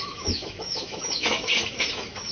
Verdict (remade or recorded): remade